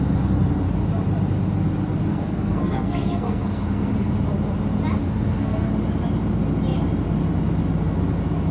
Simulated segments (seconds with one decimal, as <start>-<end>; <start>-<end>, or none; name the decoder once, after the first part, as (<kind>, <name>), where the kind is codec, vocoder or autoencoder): 2.1-3.9 (codec, SNAC); 5.0-5.7